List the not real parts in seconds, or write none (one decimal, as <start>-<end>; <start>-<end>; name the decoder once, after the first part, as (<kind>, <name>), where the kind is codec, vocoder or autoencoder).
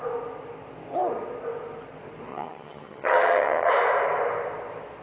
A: 2.3-3.7 (vocoder, HiFi-GAN)